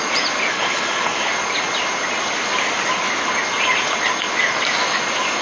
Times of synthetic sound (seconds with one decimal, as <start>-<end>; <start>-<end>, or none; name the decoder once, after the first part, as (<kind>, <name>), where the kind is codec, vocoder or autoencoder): 0.5-1.3 (codec, HILCodec)